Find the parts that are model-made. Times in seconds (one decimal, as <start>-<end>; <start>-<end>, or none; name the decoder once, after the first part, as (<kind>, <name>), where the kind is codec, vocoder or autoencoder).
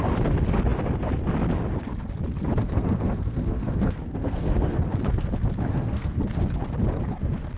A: 2.6-4.8 (codec, SNAC); 5.7-6.2